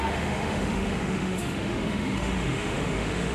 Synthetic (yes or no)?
yes